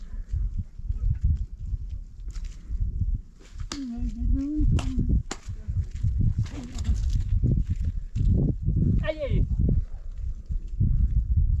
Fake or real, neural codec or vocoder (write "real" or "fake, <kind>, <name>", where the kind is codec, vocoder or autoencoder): real